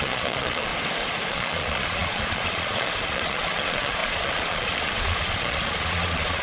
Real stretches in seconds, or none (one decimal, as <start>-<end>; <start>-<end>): 0.7-1.3